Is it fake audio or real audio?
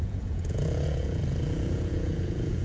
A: fake